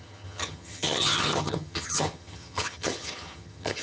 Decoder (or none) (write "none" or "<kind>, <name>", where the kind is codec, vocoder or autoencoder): vocoder, HiFi-GAN